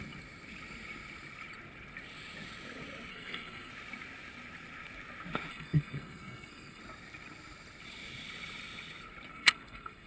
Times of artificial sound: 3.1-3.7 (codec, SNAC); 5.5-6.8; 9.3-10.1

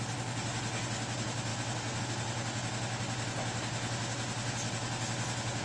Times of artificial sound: none

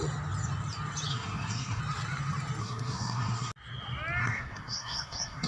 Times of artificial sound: 1.1-1.8 (codec, SNAC); 2.6-3.5; 4.2-5.5

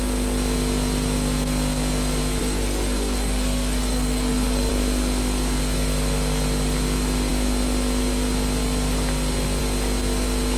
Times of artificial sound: 2.4-4.7 (codec, SNAC)

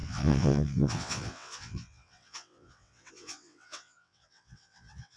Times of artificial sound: 0.0-5.2 (vocoder, WaveNeXt)